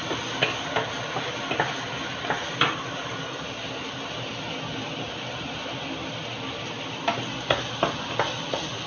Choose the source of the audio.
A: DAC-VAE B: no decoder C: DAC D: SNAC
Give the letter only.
B